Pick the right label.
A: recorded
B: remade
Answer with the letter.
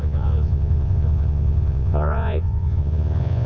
B